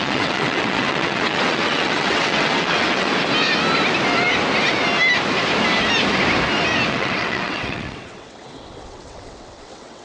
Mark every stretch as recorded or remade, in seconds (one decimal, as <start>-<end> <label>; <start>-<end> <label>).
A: 0.0-3.1 remade; 3.1-6.9 recorded; 6.9-10.0 remade